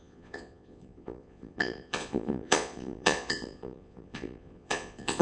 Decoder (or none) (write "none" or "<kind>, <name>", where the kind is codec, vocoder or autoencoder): vocoder, Vocos